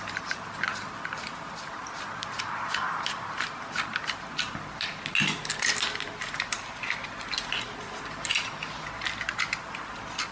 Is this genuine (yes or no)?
yes